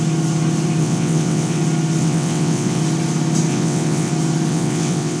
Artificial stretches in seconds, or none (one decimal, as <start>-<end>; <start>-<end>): 0.8-1.6; 2.0-2.8; 3.5-4.1; 4.5-5.2